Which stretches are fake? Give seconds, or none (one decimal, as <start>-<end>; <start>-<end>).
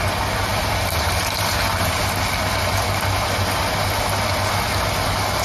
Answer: 0.5-1.8